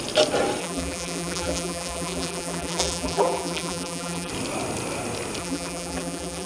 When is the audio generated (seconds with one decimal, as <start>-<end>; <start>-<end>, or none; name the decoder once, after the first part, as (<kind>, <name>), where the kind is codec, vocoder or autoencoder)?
0.6-4.3 (vocoder, BigVGAN v2); 5.4-6.5